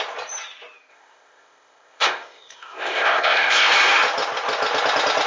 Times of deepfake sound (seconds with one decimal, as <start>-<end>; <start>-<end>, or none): 0.9-3.7